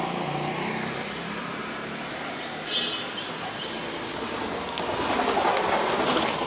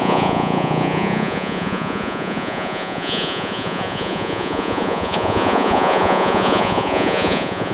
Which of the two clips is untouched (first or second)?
first